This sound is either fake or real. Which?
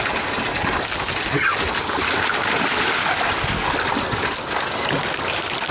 real